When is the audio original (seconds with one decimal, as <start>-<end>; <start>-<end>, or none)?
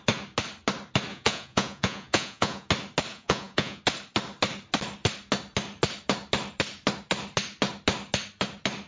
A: 0.0-1.1; 2.7-3.1; 3.8-8.9